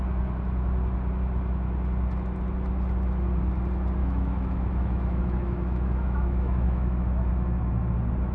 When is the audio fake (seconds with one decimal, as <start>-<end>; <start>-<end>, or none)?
4.0-7.3